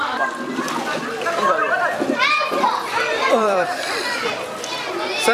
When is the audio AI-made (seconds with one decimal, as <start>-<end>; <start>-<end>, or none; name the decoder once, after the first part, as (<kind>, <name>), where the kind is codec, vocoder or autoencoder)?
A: 1.6-4.8 (vocoder, BigVGAN v2)